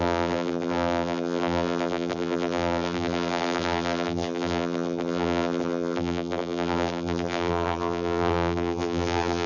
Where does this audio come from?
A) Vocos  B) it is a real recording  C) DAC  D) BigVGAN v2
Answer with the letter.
D